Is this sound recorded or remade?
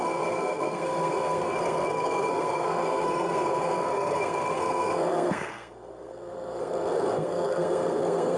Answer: remade